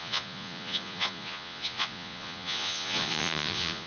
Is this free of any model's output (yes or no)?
no